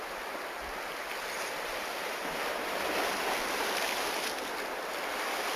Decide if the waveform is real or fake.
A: real